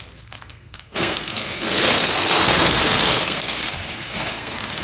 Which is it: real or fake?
fake